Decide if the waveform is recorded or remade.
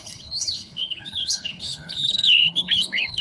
remade